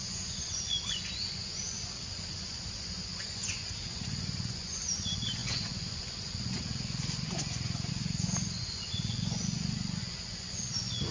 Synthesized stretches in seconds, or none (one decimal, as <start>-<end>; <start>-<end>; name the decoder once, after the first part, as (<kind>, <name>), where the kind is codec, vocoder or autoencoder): 0.0-11.1 (vocoder, Vocos)